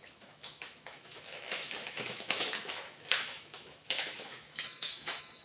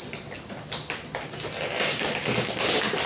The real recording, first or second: second